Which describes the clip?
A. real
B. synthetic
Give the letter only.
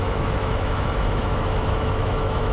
B